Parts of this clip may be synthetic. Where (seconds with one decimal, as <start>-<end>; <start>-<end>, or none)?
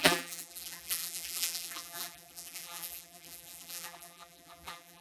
0.0-5.0